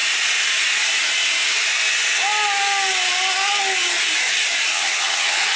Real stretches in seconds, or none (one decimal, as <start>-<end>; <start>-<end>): 0.0-4.7